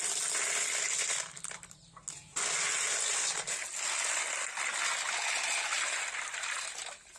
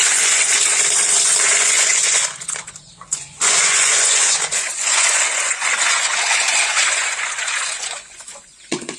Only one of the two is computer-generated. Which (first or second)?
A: second